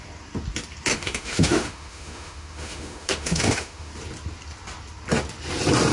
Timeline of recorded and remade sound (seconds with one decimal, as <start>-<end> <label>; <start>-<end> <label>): 0.0-0.9 recorded; 0.9-3.9 remade; 3.9-5.9 recorded